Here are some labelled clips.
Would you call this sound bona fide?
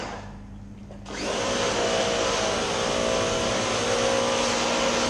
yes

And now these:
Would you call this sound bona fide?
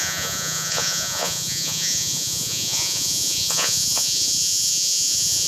no